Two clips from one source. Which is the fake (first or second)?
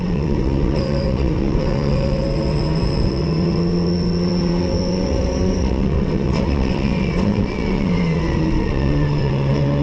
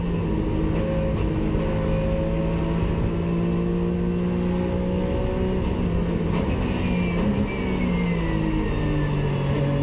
first